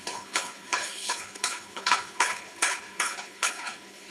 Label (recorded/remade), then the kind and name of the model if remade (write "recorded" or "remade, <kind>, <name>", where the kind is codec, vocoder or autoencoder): remade, codec, HILCodec